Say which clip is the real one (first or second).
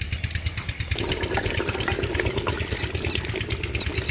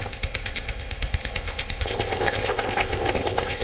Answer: first